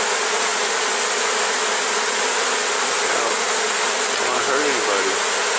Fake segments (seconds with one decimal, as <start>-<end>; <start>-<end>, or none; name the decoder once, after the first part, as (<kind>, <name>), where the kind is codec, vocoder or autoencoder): none